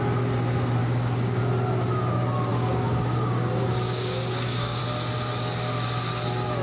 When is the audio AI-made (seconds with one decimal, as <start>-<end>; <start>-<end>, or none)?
0.8-1.5; 2.5-4.8